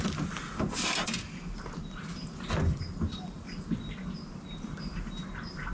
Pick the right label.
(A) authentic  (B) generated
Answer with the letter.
A